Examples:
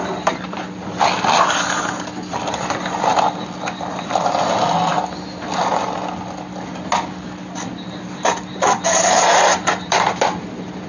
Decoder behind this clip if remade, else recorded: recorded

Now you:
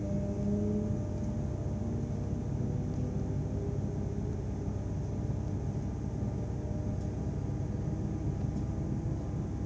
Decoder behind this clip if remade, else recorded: recorded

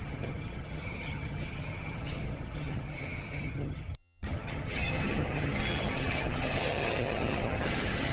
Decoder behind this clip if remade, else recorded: remade, vocoder, HiFi-GAN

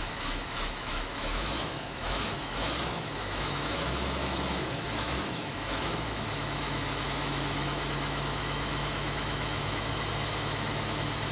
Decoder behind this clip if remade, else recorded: remade, autoencoder, DAC-VAE